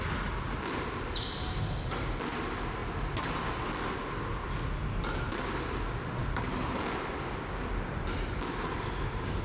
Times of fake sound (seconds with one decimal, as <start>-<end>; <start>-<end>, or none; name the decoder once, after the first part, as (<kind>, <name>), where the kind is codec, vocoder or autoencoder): none